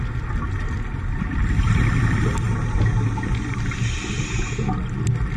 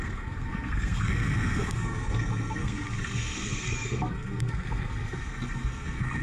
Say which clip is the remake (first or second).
second